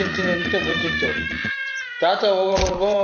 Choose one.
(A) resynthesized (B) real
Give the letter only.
A